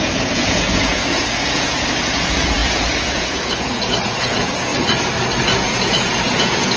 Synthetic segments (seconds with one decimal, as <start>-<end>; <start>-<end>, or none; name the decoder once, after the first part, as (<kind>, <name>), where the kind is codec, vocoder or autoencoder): 0.0-4.7 (vocoder, Vocos); 5.6-6.8